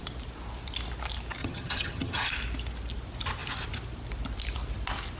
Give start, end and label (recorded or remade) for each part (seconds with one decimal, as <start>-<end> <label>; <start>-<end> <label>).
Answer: 0.0-1.4 recorded; 1.4-2.3 remade; 2.3-5.2 recorded